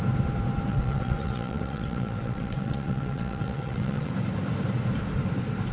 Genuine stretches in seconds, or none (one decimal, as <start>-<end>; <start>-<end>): 0.0-0.7; 4.1-5.7